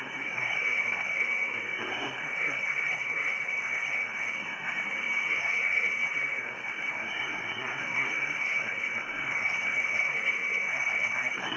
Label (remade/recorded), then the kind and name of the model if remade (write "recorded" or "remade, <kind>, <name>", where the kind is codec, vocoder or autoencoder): remade, codec, SNAC